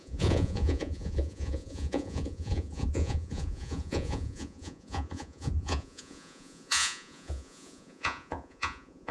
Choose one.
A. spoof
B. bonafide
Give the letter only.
A